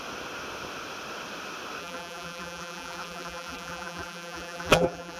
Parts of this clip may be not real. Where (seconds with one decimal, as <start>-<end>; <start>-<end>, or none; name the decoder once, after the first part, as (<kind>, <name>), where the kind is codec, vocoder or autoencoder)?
1.8-5.2 (vocoder, BigVGAN v2)